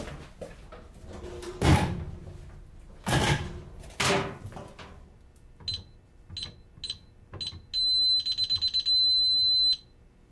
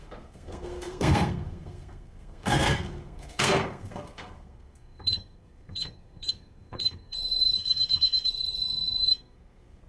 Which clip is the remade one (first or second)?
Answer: second